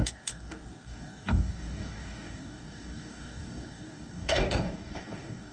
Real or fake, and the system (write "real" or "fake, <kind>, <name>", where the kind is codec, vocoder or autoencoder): fake, codec, DAC